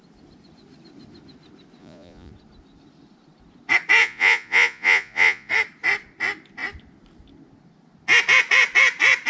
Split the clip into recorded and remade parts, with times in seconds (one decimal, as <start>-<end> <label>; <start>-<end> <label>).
0.0-1.8 recorded; 1.8-2.3 remade; 2.3-4.0 recorded; 4.0-5.5 remade; 5.5-9.3 recorded